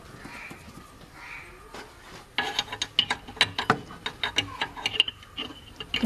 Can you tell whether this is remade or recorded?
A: recorded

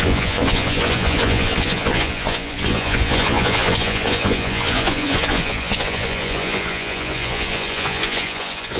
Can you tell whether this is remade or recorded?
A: remade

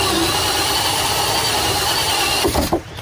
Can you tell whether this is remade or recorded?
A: remade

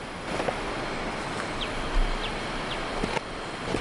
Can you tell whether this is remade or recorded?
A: recorded